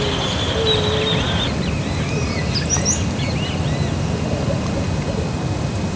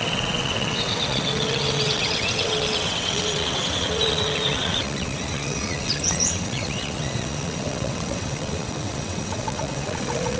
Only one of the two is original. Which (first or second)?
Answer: first